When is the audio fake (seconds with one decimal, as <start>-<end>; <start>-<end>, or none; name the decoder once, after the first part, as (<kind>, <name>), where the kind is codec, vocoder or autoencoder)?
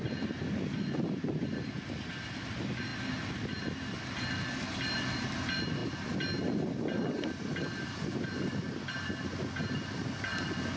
none